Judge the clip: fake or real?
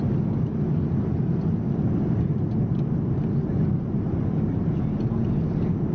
real